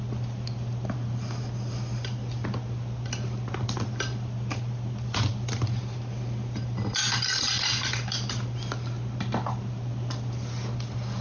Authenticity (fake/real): real